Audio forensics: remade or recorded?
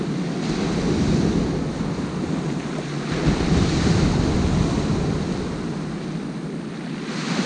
recorded